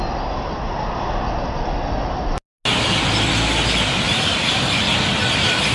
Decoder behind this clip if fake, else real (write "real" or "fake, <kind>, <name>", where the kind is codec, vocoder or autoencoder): real